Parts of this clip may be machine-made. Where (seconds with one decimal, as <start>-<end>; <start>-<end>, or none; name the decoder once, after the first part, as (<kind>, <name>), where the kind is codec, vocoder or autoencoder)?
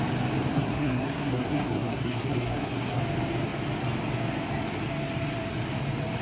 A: 0.5-3.0 (codec, SNAC)